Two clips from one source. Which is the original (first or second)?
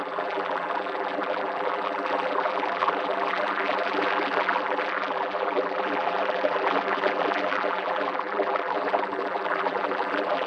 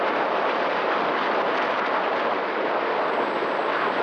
second